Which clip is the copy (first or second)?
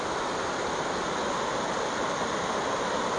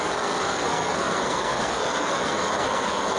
second